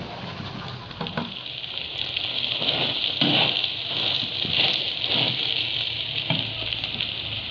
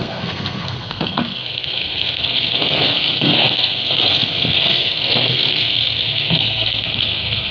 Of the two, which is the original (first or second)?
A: first